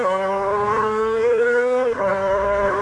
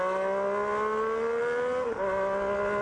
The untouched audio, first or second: second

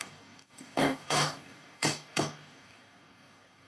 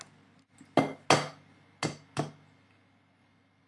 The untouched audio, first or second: second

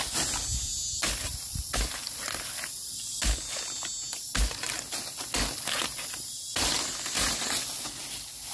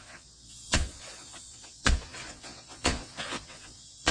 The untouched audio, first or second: first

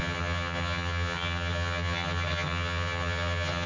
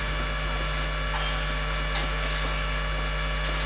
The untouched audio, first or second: second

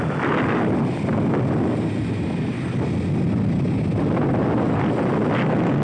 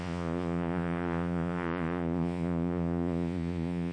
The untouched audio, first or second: first